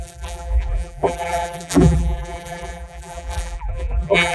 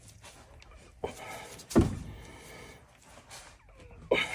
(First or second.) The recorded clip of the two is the second